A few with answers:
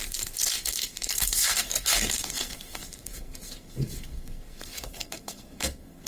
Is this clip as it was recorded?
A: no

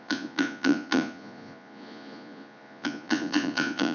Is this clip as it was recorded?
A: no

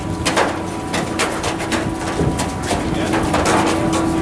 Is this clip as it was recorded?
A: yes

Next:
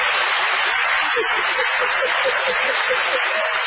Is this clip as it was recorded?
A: yes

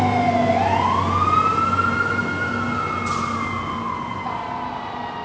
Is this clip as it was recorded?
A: yes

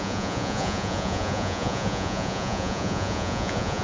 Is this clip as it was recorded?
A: no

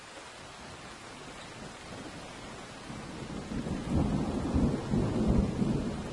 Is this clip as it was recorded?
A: yes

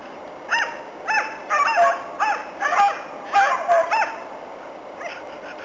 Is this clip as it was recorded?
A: yes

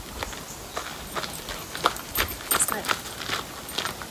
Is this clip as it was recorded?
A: yes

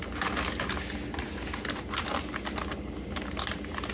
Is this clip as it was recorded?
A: yes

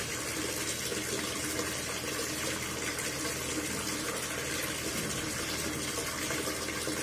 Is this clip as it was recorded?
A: yes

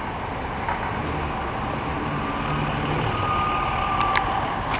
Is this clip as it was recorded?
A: yes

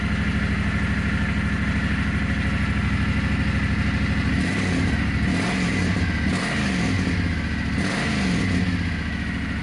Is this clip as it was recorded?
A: yes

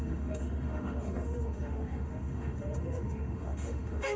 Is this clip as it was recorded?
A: no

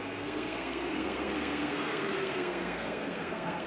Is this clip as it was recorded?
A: no